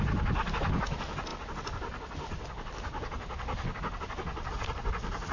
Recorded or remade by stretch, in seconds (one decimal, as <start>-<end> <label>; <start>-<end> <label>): 0.0-5.3 recorded